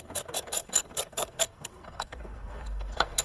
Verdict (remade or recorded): remade